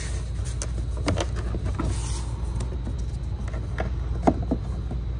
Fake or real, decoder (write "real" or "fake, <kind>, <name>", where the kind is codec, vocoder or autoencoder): real